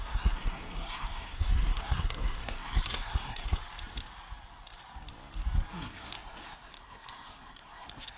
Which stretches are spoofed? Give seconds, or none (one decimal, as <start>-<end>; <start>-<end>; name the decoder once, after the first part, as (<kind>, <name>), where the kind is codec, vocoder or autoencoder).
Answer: 0.0-3.6 (codec, SNAC); 5.7-8.2